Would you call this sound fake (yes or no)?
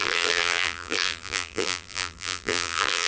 yes